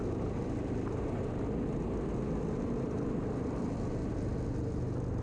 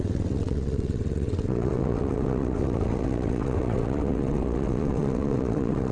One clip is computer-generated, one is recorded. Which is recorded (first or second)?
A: first